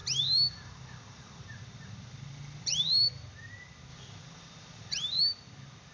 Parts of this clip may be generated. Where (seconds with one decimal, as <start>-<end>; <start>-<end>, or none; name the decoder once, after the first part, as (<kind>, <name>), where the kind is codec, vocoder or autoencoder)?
0.0-3.1 (vocoder, BigVGAN v2); 3.9-5.2